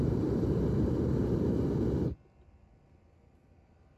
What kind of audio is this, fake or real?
real